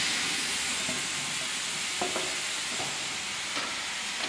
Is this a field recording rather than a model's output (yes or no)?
yes